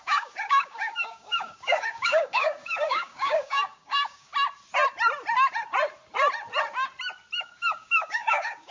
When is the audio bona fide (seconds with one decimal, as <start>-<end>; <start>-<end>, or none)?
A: 4.3-7.4